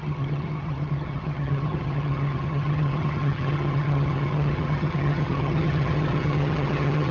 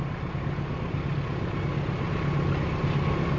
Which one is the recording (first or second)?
second